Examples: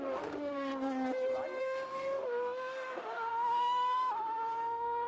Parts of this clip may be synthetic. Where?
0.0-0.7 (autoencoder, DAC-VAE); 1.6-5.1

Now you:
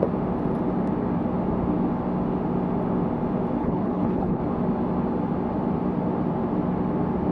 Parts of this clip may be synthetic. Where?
3.6-4.4 (codec, HILCodec)

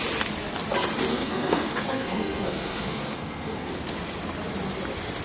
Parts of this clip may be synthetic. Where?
1.1-3.7 (codec, SNAC)

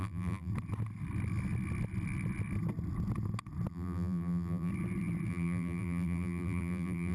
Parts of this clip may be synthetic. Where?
0.0-0.5 (vocoder, BigVGAN v2); 3.7-4.7; 5.3-7.1